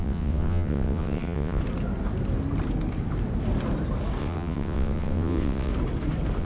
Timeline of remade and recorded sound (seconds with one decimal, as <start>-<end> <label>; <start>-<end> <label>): 0.0-1.6 remade; 1.6-4.2 recorded; 4.2-5.7 remade; 5.7-6.4 recorded